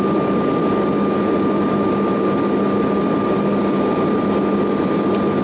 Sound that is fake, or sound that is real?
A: real